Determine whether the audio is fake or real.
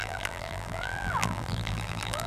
fake